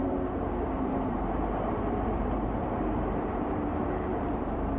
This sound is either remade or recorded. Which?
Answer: remade